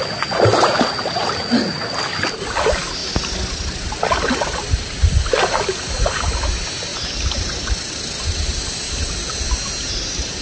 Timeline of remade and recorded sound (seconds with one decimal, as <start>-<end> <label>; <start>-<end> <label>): 0.0-10.4 recorded